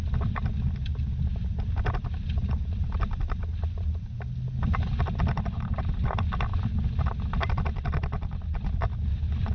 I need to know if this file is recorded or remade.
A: recorded